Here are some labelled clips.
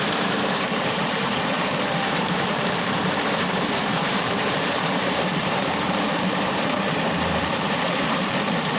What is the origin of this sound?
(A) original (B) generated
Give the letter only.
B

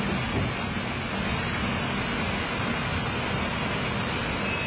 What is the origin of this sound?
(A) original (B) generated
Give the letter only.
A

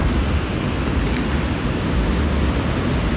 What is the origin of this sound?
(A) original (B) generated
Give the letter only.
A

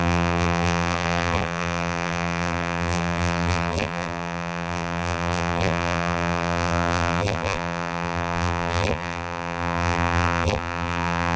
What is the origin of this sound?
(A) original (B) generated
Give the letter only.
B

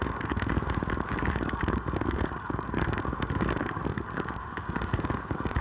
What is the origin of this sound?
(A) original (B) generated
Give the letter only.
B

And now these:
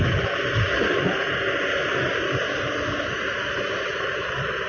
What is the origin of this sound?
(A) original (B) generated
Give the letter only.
A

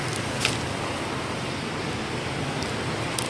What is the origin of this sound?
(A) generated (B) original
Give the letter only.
B